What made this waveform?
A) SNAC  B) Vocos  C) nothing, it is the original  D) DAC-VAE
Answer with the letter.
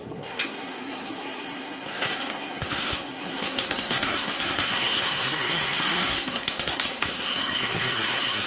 A